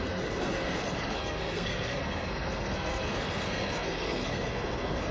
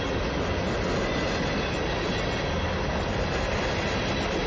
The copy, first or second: first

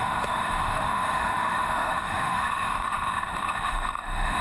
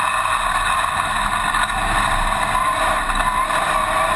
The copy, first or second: first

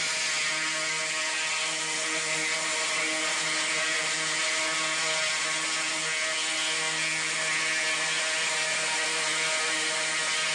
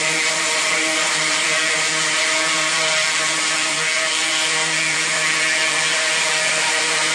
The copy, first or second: second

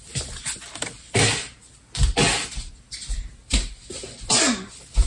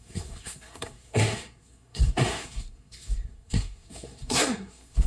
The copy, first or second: second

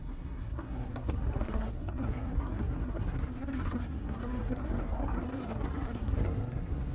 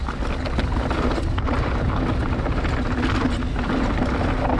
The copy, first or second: first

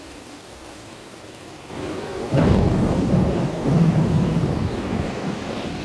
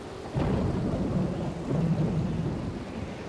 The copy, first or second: first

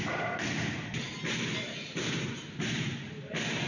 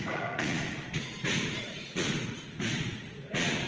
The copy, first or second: second